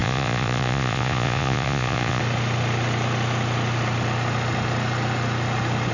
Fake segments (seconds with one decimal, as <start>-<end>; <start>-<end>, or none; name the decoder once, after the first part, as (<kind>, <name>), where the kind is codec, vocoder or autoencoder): 0.0-2.2 (vocoder, Vocos)